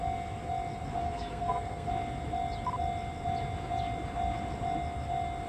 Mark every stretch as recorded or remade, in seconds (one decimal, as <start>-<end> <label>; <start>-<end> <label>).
0.0-1.0 recorded; 1.0-1.9 remade; 1.9-5.5 recorded